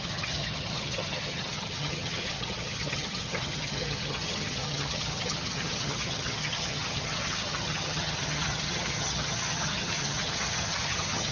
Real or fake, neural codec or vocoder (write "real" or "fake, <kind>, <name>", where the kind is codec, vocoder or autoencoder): fake, vocoder, HiFi-GAN